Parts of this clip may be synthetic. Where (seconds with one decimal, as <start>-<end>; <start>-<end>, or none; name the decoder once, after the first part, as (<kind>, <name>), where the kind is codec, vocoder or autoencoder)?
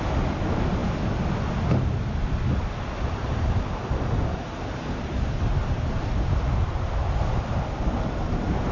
none